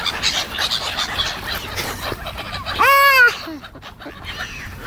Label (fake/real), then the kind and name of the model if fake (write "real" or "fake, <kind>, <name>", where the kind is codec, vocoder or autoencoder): real